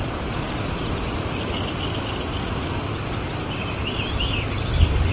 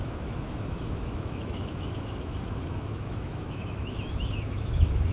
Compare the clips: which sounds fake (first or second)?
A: second